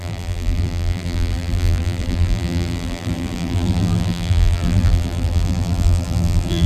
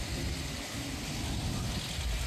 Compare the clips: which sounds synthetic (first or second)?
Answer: first